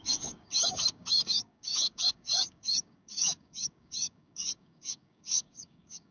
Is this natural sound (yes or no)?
no